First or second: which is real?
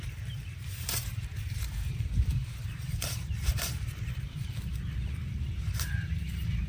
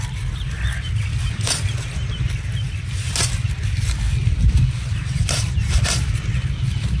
second